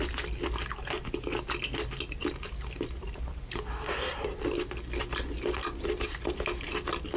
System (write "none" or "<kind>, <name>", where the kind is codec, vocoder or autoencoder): none